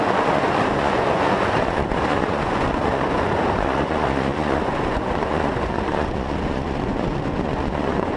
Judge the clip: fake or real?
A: fake